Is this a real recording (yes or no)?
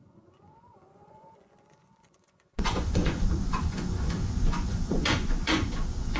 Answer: no